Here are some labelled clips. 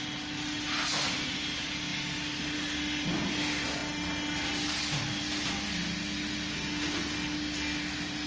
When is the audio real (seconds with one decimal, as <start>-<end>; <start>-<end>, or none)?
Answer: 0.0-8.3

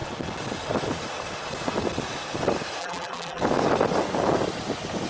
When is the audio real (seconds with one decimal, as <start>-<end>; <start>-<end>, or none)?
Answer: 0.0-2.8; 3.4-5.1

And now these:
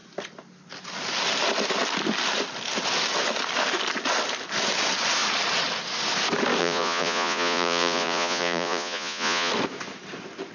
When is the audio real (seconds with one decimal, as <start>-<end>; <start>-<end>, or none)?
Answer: 0.0-6.6; 9.5-10.5

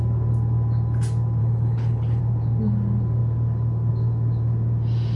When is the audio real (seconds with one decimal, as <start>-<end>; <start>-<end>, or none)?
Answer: 0.0-1.4; 2.2-5.2

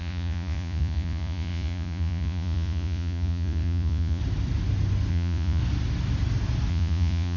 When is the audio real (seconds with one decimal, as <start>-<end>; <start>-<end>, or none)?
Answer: 4.2-5.1; 5.6-6.7

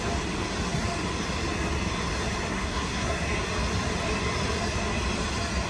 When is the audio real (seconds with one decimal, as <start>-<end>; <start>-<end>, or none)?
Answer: 0.0-2.5; 3.2-5.7

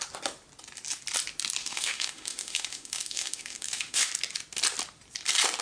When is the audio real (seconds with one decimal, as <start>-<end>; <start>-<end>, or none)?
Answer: 0.0-1.6; 4.1-5.6

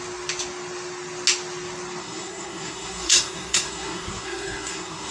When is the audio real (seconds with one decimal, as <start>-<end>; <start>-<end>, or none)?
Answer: 0.0-2.0